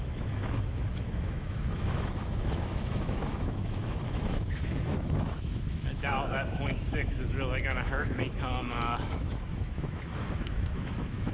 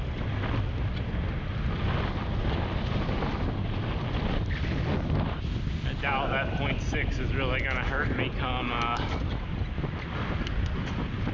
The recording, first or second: second